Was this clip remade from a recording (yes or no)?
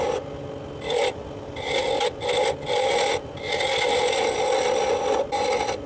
no